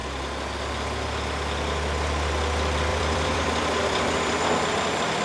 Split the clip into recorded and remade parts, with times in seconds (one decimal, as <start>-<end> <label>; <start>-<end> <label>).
0.0-2.9 recorded; 2.9-4.4 remade; 4.4-5.2 recorded